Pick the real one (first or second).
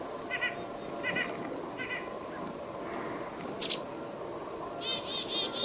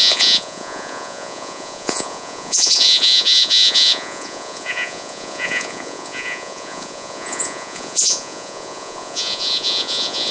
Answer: first